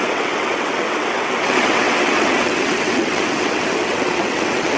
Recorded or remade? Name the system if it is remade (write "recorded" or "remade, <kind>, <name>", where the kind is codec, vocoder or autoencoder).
remade, vocoder, WaveNeXt